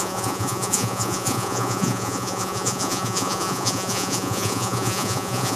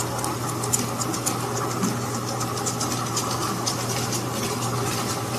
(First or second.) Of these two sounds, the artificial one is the first